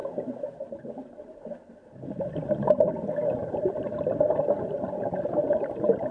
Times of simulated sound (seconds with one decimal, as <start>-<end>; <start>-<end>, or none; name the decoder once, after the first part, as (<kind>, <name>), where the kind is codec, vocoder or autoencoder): 3.7-6.1 (vocoder, BigVGAN v2)